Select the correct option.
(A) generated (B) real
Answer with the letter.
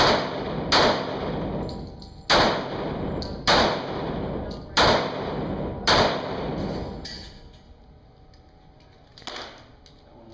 B